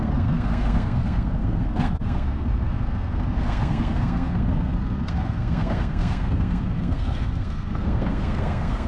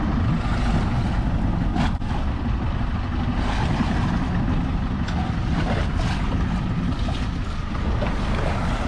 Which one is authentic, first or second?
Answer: second